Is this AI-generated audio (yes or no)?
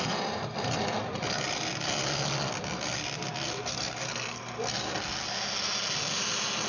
no